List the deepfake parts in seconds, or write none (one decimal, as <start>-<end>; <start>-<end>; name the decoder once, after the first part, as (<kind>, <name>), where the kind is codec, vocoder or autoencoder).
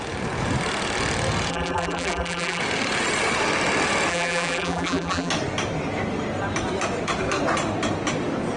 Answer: 1.5-2.6 (vocoder, BigVGAN v2); 4.1-5.3